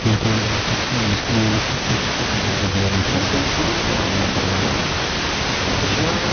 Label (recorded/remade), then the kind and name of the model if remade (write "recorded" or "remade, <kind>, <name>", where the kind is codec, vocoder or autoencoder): remade, vocoder, BigVGAN v2